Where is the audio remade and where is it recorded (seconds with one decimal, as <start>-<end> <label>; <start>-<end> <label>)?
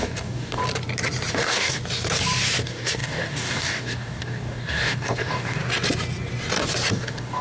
0.0-0.6 remade; 0.6-1.3 recorded; 1.3-1.8 remade; 1.8-2.6 recorded; 2.6-5.6 remade; 5.6-6.9 recorded; 6.9-7.4 remade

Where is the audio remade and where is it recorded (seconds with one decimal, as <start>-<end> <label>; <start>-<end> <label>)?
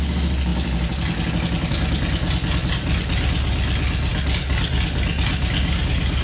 0.0-6.2 recorded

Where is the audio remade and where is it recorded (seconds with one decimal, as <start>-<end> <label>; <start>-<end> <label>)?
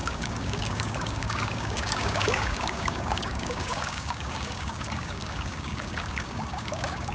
0.0-7.1 remade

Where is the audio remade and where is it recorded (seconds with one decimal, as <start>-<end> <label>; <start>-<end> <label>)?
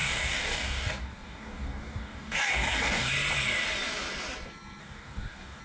0.0-3.1 remade; 3.1-4.8 recorded; 4.8-5.6 remade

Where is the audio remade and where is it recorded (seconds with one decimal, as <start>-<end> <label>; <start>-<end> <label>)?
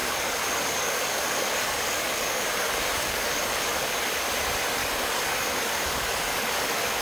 0.0-4.2 remade; 4.2-4.8 recorded; 4.8-7.0 remade